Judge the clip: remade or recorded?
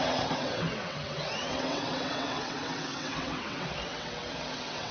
remade